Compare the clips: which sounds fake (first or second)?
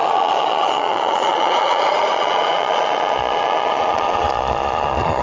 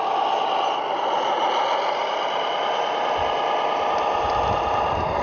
first